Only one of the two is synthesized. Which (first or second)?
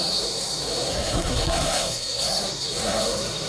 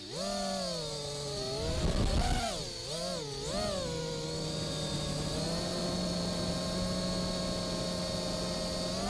first